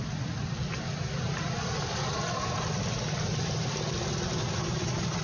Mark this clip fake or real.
real